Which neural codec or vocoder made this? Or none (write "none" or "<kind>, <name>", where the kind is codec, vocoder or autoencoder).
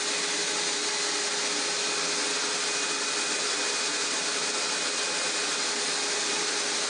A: none